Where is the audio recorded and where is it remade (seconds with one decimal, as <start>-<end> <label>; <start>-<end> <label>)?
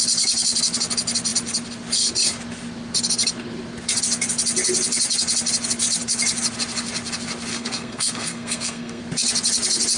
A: 0.0-7.5 recorded; 7.5-9.0 remade; 9.0-10.0 recorded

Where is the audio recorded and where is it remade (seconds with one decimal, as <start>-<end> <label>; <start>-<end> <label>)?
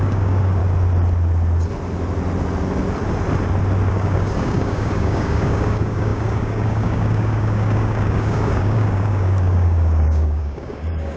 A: 0.0-0.6 remade; 0.6-3.9 recorded; 3.9-11.2 remade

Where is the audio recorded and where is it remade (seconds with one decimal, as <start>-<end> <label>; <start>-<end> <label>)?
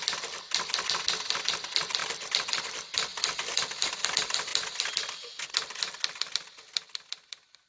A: 0.0-3.1 remade; 3.1-3.9 recorded; 3.9-7.7 remade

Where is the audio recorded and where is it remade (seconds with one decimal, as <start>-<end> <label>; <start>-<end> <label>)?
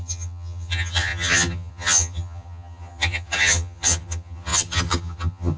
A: 0.0-5.6 remade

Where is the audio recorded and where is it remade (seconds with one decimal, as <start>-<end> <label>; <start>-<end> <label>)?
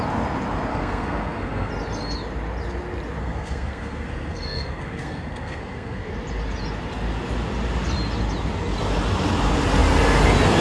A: 0.0-0.7 recorded; 0.7-1.7 remade; 1.7-3.2 recorded; 3.2-6.1 remade; 6.1-10.6 recorded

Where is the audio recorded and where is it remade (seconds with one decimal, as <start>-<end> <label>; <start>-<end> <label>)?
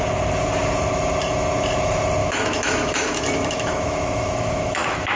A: 0.0-2.2 recorded; 2.2-5.2 remade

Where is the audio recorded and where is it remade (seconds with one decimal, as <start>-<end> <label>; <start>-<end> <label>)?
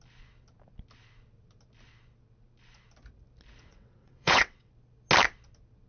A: 0.0-3.7 recorded; 3.7-4.7 remade; 4.7-5.9 recorded